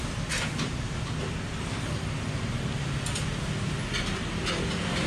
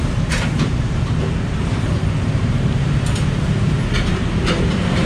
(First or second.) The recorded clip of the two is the first